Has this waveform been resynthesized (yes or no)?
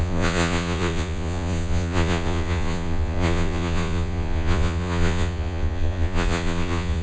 yes